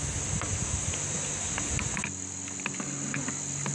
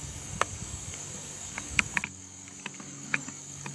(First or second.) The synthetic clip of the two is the second